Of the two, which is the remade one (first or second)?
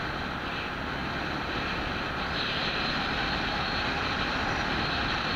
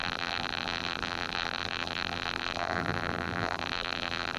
second